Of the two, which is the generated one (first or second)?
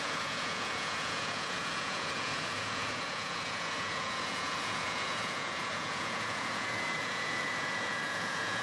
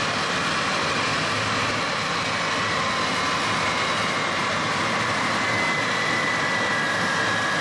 first